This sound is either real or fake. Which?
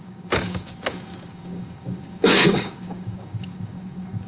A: fake